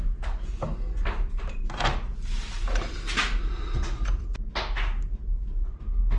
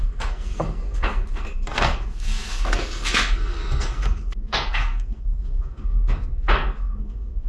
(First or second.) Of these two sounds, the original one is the first